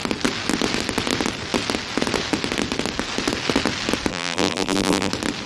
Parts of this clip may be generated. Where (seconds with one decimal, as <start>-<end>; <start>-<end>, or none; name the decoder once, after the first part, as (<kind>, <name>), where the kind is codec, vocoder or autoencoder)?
4.1-5.1 (vocoder, BigVGAN v2)